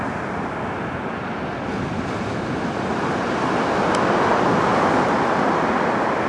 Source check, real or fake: real